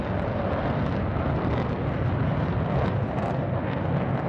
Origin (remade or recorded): recorded